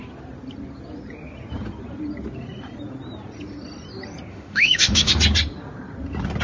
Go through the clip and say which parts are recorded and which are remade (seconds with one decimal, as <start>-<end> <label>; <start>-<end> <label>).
0.0-4.3 recorded; 4.3-5.1 remade; 5.1-6.4 recorded